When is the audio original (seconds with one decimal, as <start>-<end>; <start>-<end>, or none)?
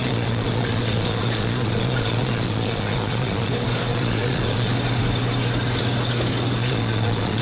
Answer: 3.5-3.9; 4.7-6.6